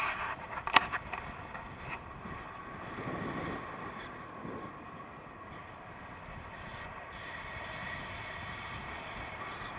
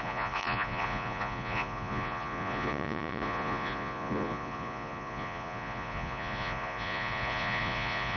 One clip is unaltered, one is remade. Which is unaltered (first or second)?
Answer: first